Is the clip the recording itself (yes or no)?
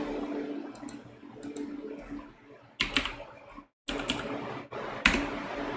yes